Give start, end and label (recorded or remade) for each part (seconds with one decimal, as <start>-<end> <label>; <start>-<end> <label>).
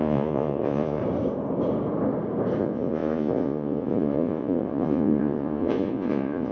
0.0-1.0 remade; 1.0-2.6 recorded; 2.6-6.5 remade